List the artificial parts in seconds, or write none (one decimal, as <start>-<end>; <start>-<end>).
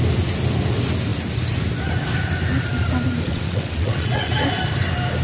3.3-4.3